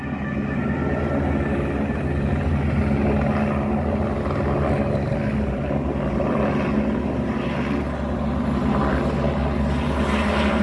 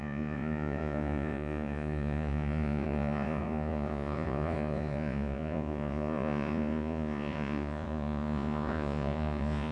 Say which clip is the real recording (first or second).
first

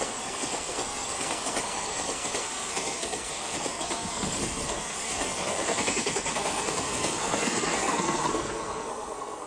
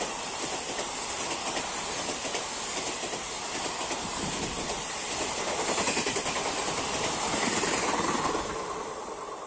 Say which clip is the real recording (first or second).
second